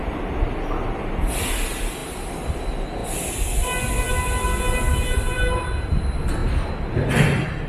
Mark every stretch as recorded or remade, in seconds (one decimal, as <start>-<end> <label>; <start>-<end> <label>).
0.0-2.0 recorded; 2.0-2.6 remade; 2.6-4.9 recorded; 4.9-5.9 remade; 5.9-7.7 recorded